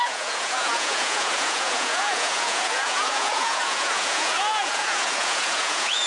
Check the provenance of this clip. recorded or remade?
remade